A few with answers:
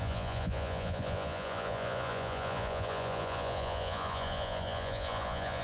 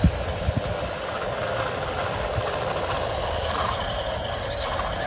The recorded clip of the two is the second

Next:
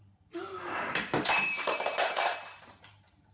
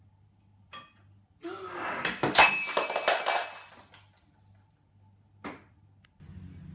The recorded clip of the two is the second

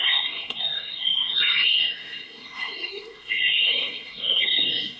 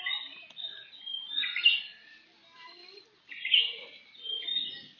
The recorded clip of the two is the second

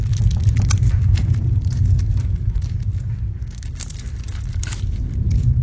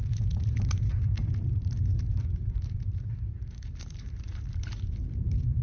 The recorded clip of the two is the first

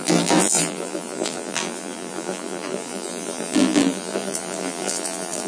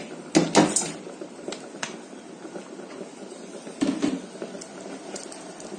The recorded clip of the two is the second